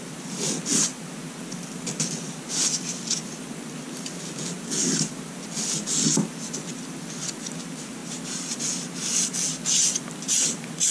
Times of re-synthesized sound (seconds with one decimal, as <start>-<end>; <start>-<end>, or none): none